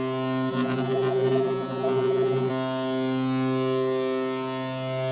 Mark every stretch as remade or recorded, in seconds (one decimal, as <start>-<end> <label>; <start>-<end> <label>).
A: 0.0-0.5 recorded; 0.5-2.5 remade; 2.5-5.1 recorded